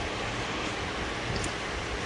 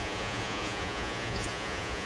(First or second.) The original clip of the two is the first